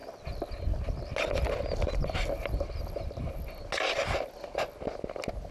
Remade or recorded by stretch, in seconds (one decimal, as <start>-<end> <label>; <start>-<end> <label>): 0.0-5.5 recorded